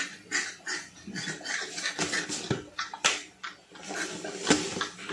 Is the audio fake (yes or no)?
no